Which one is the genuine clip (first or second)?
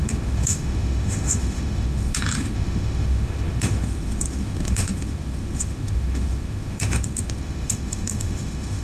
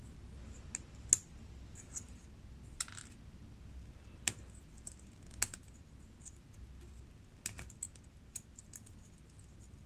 second